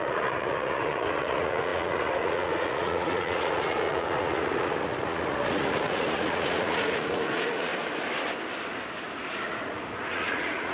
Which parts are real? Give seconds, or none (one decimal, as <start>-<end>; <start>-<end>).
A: 7.7-9.3